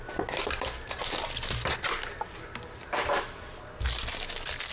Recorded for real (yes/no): yes